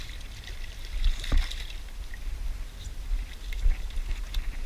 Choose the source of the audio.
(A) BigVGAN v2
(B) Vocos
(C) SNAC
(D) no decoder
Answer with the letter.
D